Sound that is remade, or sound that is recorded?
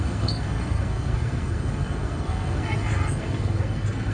remade